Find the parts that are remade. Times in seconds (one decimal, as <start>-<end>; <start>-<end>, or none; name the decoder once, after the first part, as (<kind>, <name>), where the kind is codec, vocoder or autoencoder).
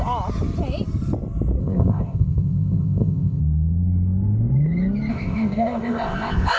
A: 1.6-3.4 (codec, ZipCodec); 5.1-6.6